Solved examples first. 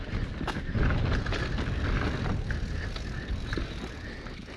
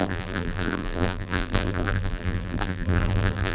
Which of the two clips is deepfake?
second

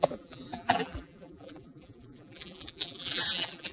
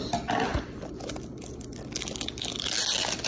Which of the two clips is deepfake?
first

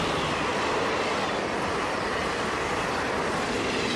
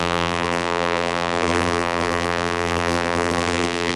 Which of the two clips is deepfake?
second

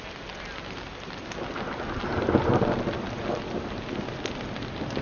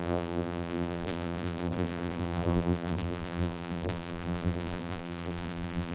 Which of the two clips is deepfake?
second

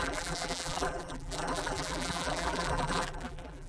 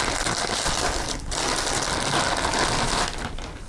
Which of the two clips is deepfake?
first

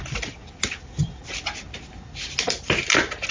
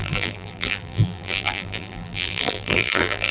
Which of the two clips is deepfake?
second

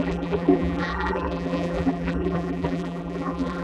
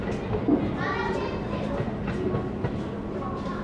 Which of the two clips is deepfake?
first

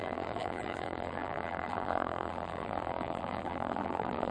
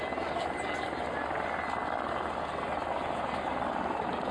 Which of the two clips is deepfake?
first